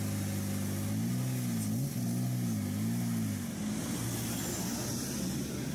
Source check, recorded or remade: recorded